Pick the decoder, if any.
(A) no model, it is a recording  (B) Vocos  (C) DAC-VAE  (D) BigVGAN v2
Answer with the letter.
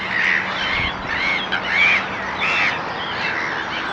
A